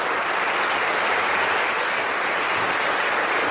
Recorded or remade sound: recorded